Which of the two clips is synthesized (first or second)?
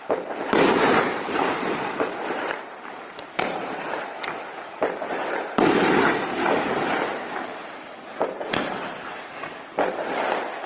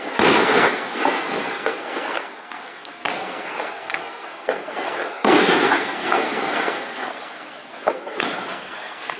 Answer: second